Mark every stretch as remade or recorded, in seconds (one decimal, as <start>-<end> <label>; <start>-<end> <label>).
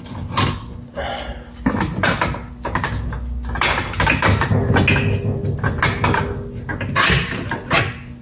0.0-8.2 recorded